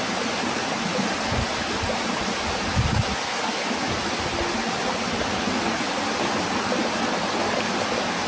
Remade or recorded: recorded